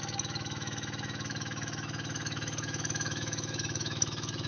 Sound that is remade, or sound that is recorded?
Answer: remade